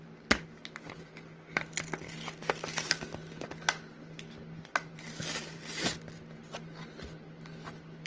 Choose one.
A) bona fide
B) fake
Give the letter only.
A